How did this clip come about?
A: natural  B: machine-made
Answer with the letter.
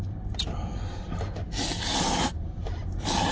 A